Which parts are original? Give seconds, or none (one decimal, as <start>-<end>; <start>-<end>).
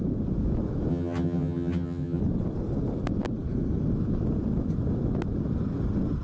0.0-0.9; 2.2-6.2